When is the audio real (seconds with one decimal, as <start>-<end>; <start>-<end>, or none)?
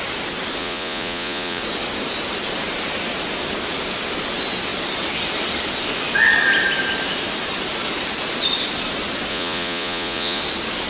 0.0-0.6; 1.6-9.3; 10.4-10.9